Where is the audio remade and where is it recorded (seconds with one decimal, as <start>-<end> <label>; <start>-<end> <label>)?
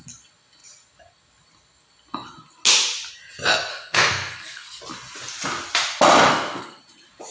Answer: 0.0-3.7 recorded; 3.7-4.8 remade; 4.8-6.3 recorded; 6.3-6.8 remade; 6.8-7.3 recorded